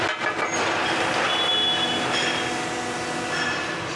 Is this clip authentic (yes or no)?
yes